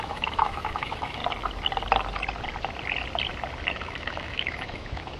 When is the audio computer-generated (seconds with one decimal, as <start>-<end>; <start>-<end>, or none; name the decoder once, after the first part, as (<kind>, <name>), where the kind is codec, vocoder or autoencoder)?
0.0-1.2 (autoencoder, DAC-VAE); 3.7-5.2